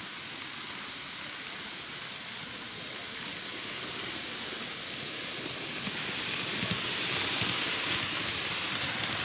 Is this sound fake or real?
real